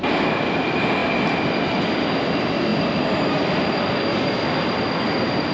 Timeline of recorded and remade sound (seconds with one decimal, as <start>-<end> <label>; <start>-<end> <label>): 0.0-5.5 recorded